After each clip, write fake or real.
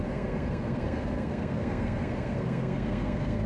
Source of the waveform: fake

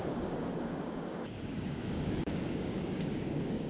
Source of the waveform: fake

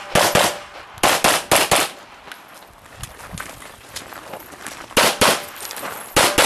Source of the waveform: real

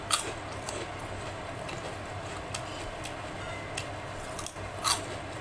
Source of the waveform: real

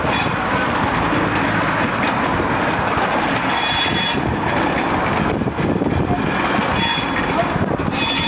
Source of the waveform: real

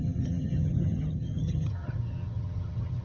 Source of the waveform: fake